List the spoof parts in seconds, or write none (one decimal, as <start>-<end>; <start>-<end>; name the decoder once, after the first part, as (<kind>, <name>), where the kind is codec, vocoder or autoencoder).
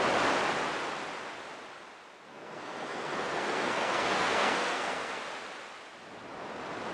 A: 2.3-5.2 (codec, SNAC)